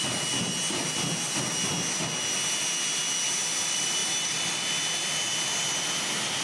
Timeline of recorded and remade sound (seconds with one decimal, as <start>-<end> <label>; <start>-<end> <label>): 0.0-6.4 recorded